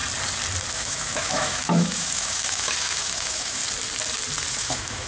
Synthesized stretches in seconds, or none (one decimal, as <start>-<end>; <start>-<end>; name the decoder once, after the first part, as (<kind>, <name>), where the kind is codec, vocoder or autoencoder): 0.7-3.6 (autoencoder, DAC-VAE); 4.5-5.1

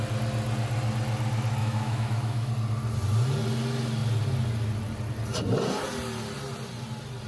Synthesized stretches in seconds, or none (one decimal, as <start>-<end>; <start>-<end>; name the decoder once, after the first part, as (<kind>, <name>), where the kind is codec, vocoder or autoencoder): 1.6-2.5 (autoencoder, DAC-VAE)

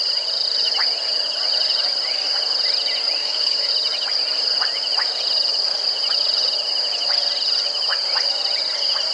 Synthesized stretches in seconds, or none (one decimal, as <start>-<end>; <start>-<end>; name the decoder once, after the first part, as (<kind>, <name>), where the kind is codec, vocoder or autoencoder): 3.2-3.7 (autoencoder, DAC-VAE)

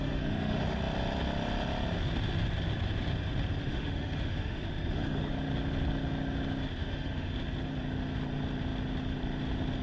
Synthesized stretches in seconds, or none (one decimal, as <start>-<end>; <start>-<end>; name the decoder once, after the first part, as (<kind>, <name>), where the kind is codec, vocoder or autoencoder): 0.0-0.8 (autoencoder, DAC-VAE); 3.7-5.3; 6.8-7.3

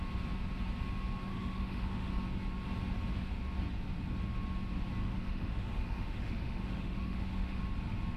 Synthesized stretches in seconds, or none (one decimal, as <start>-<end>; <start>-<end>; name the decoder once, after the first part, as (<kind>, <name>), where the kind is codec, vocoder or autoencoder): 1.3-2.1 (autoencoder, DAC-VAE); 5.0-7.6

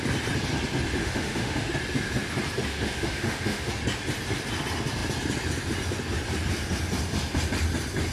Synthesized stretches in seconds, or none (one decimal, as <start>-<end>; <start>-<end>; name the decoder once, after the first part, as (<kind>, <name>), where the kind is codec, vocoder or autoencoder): 1.0-1.7 (autoencoder, DAC-VAE); 2.7-3.7

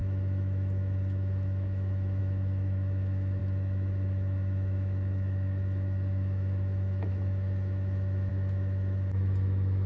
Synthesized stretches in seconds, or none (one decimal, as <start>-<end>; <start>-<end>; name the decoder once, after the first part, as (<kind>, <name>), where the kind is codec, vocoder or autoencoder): 0.0-9.9 (autoencoder, DAC-VAE)